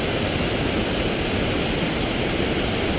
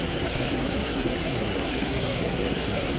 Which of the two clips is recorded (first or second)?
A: first